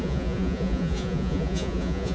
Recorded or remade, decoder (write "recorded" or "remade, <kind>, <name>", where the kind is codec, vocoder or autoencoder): remade, vocoder, Vocos